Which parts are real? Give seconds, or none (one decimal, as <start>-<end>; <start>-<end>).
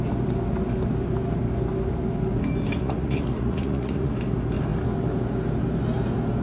0.0-2.8; 4.1-6.4